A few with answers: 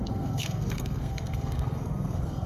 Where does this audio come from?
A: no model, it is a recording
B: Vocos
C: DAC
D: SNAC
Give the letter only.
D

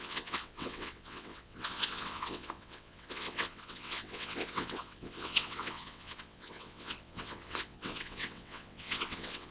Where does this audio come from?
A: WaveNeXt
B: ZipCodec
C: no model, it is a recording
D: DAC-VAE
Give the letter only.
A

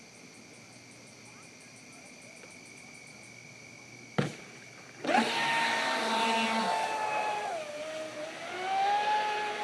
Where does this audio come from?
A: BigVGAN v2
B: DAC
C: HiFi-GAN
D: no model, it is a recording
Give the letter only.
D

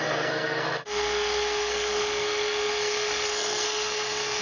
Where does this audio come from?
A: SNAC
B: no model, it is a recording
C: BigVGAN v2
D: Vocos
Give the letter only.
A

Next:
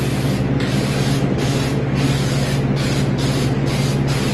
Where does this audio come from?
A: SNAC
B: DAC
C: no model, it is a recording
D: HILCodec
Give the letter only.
C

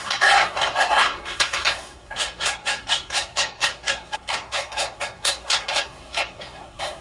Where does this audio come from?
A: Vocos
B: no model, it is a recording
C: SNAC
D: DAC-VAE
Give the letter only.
C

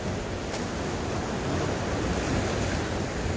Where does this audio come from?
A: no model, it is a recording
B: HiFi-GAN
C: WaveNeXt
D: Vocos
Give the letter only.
A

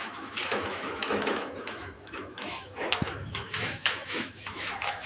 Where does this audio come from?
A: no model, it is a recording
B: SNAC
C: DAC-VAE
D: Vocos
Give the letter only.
C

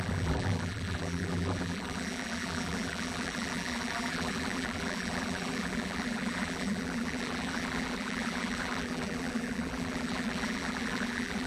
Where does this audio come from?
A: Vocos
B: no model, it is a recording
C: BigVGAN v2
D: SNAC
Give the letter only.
C